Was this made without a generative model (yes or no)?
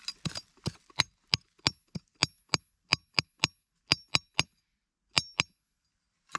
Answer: yes